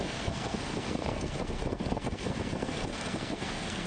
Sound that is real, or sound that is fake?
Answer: fake